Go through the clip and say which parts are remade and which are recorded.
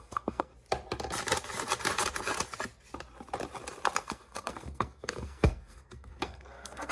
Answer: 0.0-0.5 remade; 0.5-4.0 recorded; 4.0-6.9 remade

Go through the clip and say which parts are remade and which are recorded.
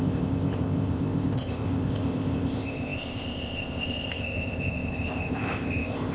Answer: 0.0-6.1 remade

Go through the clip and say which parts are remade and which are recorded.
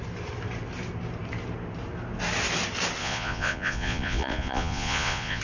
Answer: 0.0-3.0 recorded; 3.0-5.4 remade